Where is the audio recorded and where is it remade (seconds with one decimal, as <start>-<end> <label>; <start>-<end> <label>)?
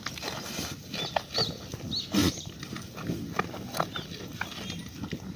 0.0-2.2 recorded; 2.2-2.9 remade; 2.9-5.4 recorded